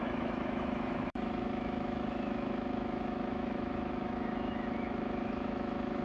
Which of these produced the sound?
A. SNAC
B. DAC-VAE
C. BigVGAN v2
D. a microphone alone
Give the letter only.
B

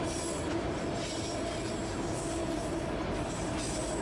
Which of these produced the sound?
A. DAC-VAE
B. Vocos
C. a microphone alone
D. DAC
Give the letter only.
C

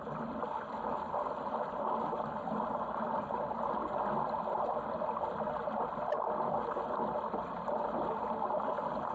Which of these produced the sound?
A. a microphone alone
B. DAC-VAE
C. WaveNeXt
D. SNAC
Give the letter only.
A